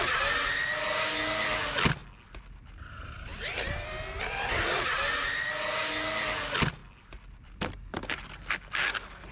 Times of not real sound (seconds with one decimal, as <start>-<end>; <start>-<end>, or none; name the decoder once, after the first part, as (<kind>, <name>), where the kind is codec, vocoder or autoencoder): 6.8-7.9 (vocoder, BigVGAN v2)